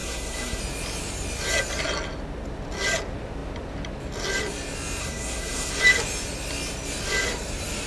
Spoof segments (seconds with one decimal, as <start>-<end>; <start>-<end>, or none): 0.0-0.6; 5.0-5.7